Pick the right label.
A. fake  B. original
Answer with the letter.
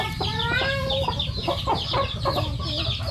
B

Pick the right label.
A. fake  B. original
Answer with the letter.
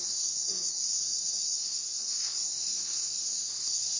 A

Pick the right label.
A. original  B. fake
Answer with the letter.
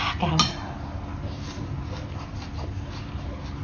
A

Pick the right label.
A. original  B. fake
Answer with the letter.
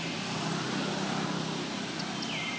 A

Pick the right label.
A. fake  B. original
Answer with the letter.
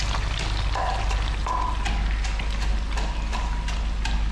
B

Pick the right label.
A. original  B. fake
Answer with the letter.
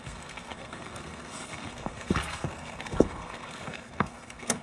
B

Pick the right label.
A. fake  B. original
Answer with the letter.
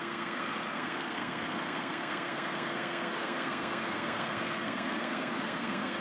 A